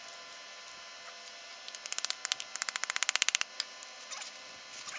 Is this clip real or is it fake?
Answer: real